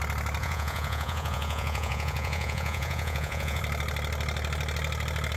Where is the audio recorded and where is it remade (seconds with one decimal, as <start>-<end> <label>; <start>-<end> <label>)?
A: 0.0-0.4 recorded; 0.4-3.6 remade; 3.6-5.4 recorded